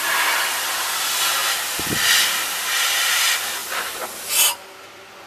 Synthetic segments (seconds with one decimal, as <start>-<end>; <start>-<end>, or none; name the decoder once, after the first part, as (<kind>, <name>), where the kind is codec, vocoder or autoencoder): 3.6-4.1 (vocoder, BigVGAN v2)